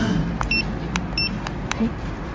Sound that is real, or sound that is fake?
real